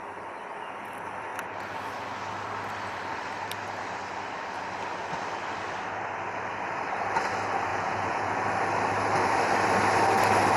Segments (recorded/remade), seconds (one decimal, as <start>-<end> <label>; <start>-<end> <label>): 0.0-7.7 recorded; 7.7-8.4 remade; 8.4-10.6 recorded